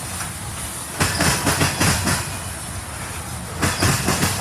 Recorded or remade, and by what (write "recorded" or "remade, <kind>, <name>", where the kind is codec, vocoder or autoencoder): recorded